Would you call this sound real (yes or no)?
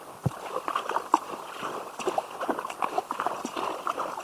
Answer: yes